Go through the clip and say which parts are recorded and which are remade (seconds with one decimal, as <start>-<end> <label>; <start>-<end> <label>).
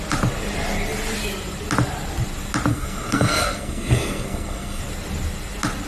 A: 0.0-2.7 recorded; 2.7-4.8 remade; 4.8-5.9 recorded